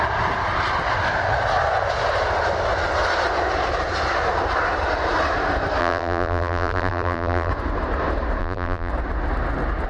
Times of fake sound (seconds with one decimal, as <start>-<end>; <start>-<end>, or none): 5.8-7.5; 8.4-8.9